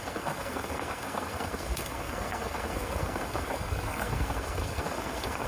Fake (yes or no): yes